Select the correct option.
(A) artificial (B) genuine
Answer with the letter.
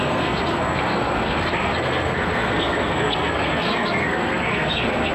A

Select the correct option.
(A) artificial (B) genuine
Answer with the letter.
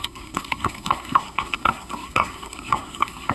A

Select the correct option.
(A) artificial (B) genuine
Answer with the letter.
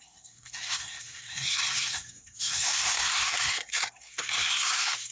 A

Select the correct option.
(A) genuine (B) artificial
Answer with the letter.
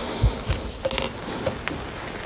A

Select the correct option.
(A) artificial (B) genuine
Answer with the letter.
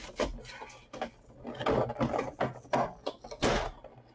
B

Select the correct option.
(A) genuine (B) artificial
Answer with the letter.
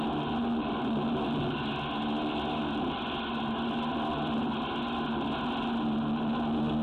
A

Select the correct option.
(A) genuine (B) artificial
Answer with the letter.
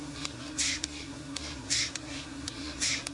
B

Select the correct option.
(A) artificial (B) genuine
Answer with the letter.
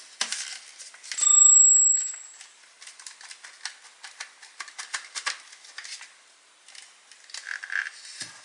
B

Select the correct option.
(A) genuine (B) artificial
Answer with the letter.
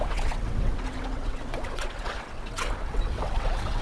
B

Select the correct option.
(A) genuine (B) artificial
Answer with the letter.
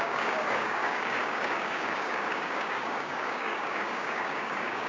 B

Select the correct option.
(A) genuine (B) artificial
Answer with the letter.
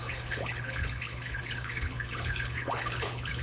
B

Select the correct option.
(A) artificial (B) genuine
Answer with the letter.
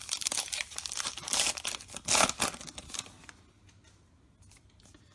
B